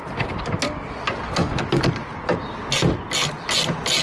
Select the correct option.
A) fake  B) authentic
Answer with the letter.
B